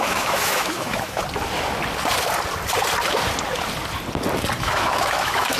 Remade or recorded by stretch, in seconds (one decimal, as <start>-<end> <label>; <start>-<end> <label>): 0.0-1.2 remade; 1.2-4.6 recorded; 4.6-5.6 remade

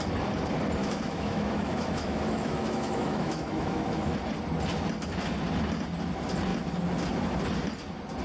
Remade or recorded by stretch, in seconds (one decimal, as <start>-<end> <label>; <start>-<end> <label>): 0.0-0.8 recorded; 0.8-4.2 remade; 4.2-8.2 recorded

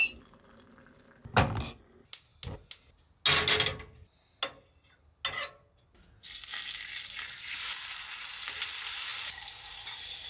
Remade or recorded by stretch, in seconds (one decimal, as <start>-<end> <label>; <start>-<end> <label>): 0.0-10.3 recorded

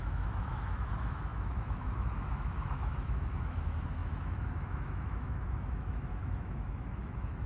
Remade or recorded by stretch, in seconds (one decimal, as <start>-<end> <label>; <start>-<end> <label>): 0.0-7.5 remade

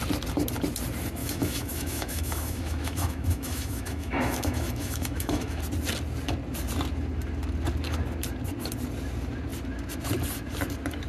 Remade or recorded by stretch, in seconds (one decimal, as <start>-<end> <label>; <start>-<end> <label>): 0.0-1.2 recorded; 1.2-5.6 remade; 5.6-11.1 recorded

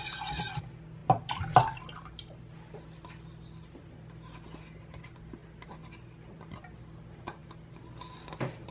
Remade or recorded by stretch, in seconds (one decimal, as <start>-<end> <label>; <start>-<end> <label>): 0.0-8.7 recorded